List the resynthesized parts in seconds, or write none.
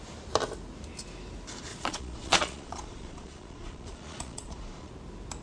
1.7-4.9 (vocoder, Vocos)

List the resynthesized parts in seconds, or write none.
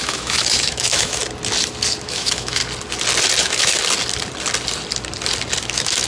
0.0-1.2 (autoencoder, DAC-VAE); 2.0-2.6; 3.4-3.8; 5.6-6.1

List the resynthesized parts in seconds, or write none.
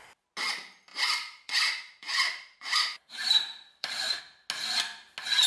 0.9-4.2 (vocoder, BigVGAN v2)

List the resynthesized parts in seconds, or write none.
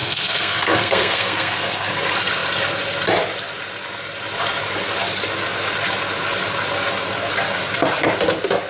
0.0-1.9 (codec, SNAC)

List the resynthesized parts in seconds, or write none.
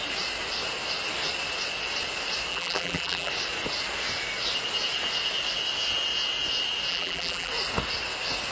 2.5-3.3 (vocoder, BigVGAN v2); 6.9-7.5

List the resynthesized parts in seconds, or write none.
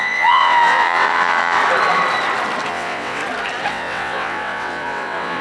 0.0-1.6 (vocoder, WaveNeXt); 2.7-3.2; 3.7-5.4